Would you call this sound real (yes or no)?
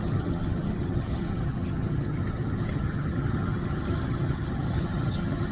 no